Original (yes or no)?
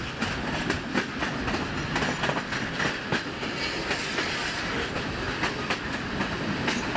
yes